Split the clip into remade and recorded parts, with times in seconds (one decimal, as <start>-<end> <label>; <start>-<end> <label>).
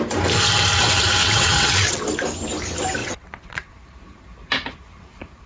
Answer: 0.0-1.2 recorded; 1.2-2.0 remade; 2.0-3.0 recorded; 3.0-3.7 remade; 3.7-5.5 recorded